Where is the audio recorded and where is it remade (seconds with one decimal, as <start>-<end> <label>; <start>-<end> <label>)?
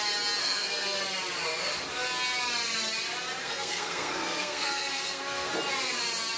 0.0-0.4 recorded; 0.4-1.0 remade; 1.0-3.4 recorded; 3.4-5.5 remade; 5.5-6.4 recorded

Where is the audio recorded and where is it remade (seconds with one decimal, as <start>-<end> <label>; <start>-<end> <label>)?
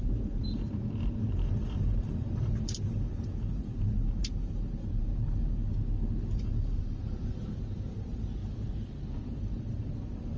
0.0-5.6 remade; 5.6-6.4 recorded; 6.4-8.4 remade; 8.4-9.4 recorded; 9.4-10.4 remade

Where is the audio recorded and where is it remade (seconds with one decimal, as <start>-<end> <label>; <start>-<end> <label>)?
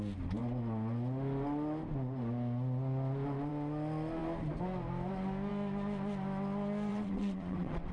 0.0-6.9 recorded; 6.9-7.9 remade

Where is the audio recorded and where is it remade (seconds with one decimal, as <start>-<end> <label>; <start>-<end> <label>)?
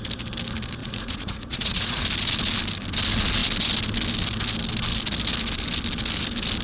0.0-0.8 recorded; 0.8-2.0 remade; 2.0-6.6 recorded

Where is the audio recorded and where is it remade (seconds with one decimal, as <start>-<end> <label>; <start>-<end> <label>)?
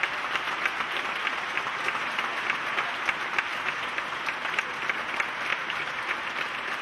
0.0-5.5 recorded; 5.5-6.8 remade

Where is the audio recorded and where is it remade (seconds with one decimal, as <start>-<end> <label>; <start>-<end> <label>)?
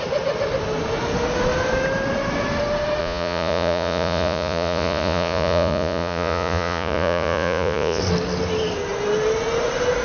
0.0-3.0 recorded; 3.0-8.0 remade; 8.0-10.0 recorded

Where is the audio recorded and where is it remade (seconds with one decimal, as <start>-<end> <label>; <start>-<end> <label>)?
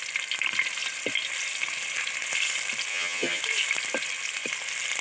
0.0-2.9 recorded; 2.9-3.4 remade; 3.4-5.0 recorded